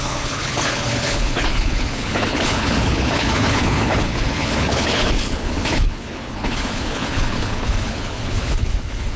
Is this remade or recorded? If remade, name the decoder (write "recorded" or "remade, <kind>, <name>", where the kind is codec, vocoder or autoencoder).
remade, codec, HILCodec